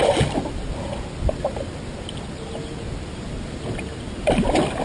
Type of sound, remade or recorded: recorded